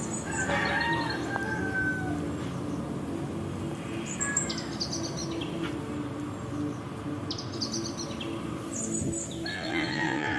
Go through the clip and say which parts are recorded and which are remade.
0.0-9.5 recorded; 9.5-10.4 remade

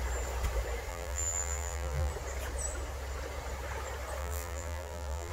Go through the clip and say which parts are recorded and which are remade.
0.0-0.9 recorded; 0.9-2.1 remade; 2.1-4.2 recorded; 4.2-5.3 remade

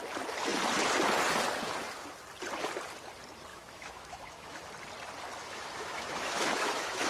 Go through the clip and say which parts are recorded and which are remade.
0.0-3.5 recorded; 3.5-4.7 remade; 4.7-5.4 recorded; 5.4-7.1 remade

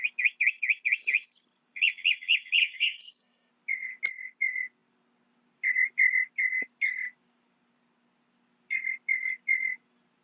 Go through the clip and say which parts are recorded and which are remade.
0.0-2.6 recorded; 2.6-3.5 remade; 3.5-10.2 recorded

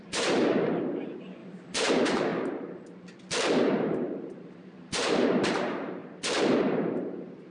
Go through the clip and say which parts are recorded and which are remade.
0.0-2.3 remade; 2.3-3.8 recorded; 3.8-6.0 remade; 6.0-7.5 recorded